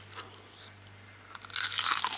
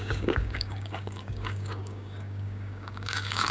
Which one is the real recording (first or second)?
first